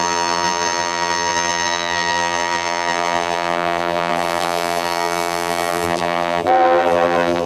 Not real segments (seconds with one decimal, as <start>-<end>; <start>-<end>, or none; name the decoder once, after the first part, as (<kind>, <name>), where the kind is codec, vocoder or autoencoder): 0.0-7.5 (vocoder, BigVGAN v2)